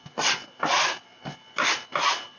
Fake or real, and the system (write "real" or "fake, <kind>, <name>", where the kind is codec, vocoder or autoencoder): real